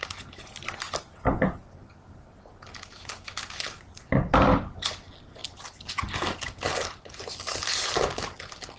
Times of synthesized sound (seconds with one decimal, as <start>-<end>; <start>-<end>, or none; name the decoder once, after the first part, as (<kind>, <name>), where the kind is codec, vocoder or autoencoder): none